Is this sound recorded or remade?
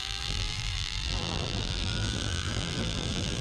remade